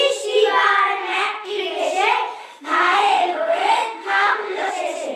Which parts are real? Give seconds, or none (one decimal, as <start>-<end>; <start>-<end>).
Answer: 0.0-1.1; 1.6-2.4; 4.7-5.2